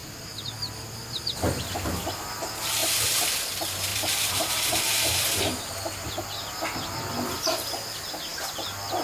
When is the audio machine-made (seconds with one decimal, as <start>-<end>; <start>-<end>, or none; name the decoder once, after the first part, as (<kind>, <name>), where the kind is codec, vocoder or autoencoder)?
0.0-1.4 (vocoder, BigVGAN v2); 3.9-6.1